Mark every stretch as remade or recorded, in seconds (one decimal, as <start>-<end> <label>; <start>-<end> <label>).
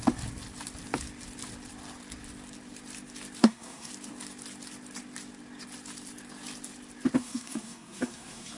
0.0-3.4 recorded; 3.4-3.9 remade; 3.9-7.2 recorded; 7.2-8.6 remade